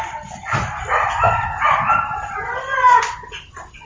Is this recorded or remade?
recorded